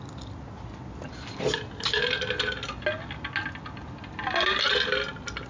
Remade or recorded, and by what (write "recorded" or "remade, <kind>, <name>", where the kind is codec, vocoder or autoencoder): recorded